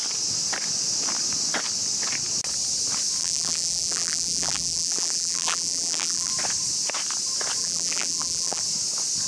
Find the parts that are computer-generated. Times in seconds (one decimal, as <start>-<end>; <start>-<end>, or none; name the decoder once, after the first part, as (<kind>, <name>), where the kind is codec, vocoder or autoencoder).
3.2-6.3 (vocoder, BigVGAN v2); 7.6-8.6